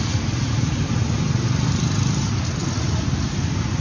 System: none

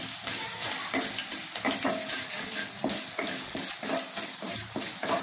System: none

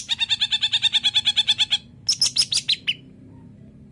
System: none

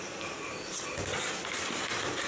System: none